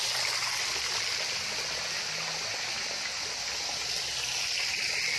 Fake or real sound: real